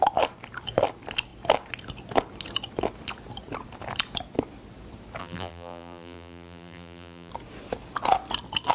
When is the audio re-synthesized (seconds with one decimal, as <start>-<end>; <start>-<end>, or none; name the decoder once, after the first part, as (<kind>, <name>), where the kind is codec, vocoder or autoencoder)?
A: 5.2-7.3 (vocoder, BigVGAN v2)